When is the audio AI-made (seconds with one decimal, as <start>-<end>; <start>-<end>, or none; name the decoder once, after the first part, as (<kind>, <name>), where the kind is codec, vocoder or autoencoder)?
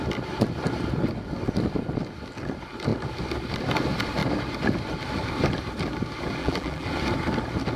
6.4-6.9 (vocoder, BigVGAN v2)